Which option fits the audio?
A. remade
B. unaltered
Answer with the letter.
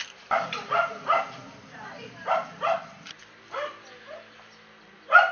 A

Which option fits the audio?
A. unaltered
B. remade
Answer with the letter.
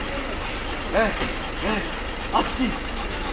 A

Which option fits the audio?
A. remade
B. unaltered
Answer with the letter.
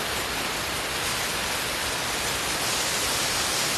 B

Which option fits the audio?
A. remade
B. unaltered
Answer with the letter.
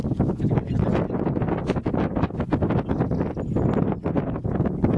B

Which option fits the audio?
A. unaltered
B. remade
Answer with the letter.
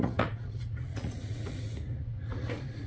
B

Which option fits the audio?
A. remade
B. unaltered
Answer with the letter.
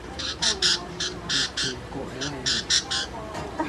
A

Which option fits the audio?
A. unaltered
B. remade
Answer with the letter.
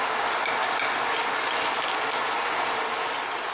A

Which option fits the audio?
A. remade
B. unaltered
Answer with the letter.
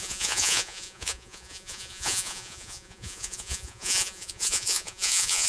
A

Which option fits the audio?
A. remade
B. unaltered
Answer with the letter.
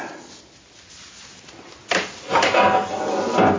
B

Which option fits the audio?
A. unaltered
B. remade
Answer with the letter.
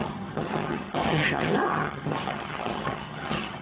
B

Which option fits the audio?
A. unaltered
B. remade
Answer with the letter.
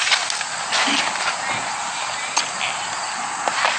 A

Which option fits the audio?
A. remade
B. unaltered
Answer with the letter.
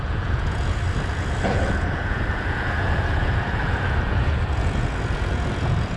A